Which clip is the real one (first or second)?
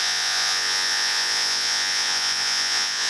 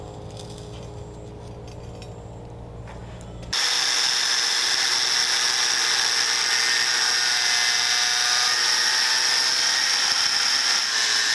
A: second